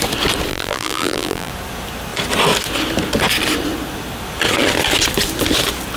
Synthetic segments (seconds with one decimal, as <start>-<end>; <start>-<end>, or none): 0.5-1.5